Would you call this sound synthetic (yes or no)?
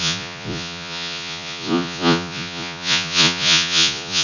yes